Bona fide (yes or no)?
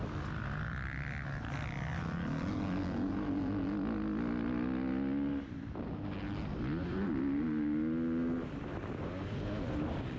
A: yes